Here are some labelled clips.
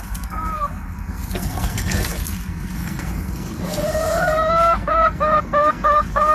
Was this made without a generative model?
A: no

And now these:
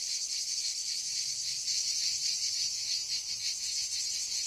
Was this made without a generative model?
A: yes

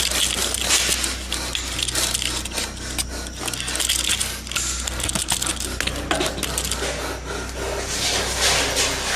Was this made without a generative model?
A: yes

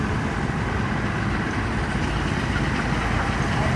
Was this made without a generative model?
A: yes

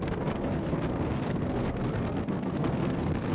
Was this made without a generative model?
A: no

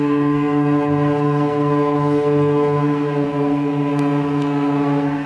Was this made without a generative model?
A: no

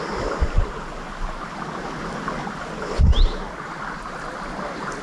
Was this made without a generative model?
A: yes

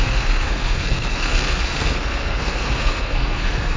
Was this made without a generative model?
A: no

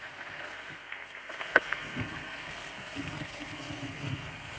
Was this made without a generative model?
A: no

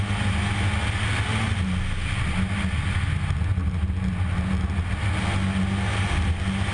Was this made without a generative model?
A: yes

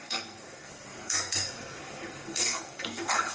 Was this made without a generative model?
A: no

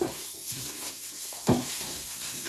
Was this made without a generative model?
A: no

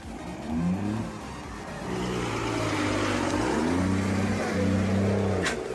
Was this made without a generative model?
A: yes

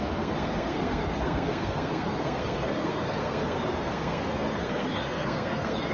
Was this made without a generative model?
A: no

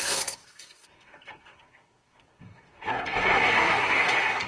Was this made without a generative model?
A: no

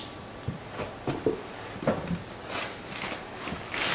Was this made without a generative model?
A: yes